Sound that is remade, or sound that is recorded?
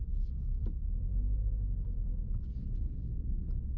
recorded